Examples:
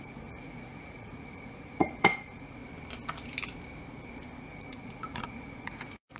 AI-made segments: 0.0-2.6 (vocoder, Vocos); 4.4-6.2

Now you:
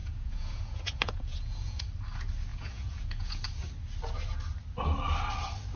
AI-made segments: 0.0-1.8 (vocoder, Vocos); 2.5-3.4

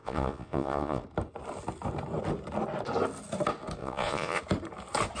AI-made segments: 0.0-1.0 (vocoder, Vocos); 3.8-4.4